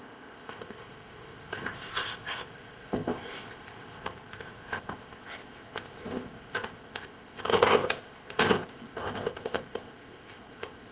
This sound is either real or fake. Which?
fake